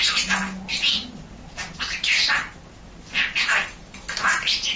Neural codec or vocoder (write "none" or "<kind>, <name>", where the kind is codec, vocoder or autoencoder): none